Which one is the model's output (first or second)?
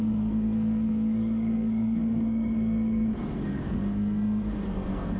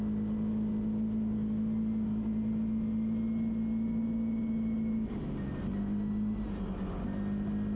first